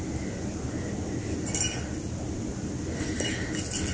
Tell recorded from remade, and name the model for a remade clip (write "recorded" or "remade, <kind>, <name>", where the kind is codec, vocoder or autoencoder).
recorded